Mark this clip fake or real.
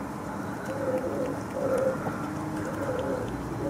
real